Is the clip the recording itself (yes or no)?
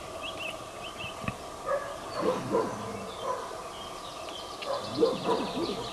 yes